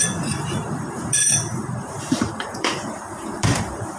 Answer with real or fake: fake